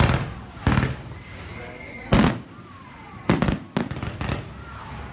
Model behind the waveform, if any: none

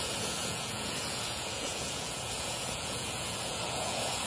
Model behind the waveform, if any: vocoder, Vocos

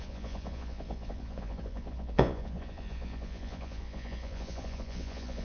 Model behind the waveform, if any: vocoder, Vocos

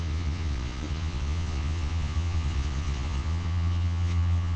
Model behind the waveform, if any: vocoder, Vocos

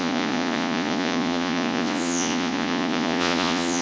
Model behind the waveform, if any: vocoder, Vocos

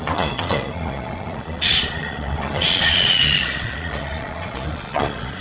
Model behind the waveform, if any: vocoder, Vocos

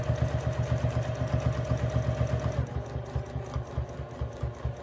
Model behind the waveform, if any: none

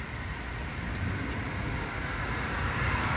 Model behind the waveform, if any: none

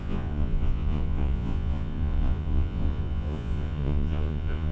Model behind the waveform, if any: vocoder, Vocos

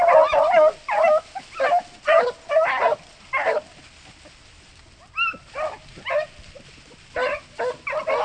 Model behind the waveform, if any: none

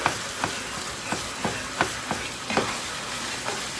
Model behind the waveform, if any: none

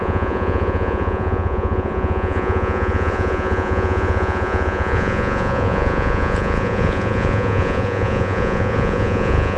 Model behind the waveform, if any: vocoder, Vocos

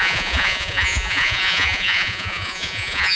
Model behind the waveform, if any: vocoder, Vocos